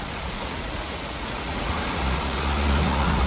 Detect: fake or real fake